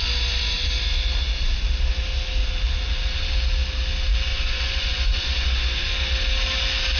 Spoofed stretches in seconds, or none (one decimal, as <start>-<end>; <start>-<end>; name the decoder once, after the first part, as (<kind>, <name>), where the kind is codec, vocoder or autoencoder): 4.3-5.9 (vocoder, Vocos)